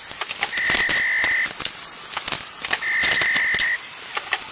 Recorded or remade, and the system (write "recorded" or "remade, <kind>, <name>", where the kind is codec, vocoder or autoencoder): recorded